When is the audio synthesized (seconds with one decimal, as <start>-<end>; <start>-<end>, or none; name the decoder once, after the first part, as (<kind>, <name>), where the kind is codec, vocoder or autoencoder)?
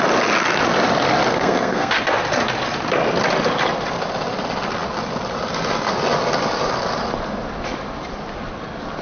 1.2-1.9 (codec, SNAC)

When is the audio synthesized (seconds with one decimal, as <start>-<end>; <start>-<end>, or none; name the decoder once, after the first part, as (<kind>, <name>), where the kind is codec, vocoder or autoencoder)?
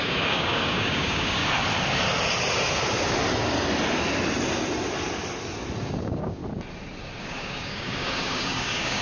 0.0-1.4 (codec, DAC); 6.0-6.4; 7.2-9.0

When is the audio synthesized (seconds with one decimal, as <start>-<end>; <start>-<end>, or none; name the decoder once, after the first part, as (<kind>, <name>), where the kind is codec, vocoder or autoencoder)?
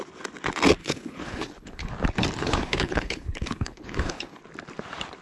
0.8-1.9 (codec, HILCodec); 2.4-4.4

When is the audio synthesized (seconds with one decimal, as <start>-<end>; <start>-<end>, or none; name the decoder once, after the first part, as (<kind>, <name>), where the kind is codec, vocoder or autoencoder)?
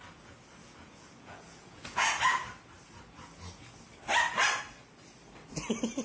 0.6-2.2 (vocoder, Vocos)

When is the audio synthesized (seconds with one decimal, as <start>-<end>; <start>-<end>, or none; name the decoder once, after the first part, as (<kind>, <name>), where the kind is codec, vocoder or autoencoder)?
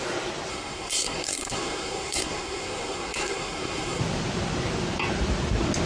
0.5-4.0 (codec, SNAC)